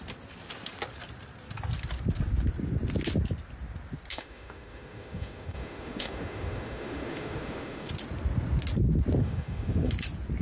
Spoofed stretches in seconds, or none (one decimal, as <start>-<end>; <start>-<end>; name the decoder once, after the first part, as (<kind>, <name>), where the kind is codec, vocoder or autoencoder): 4.1-7.9 (autoencoder, DAC-VAE); 9.2-9.9

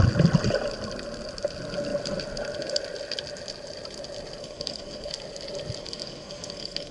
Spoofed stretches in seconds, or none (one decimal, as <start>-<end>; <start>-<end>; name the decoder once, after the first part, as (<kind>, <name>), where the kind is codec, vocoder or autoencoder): 4.4-5.1 (codec, SNAC); 5.8-6.9